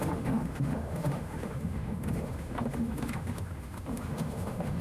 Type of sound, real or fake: fake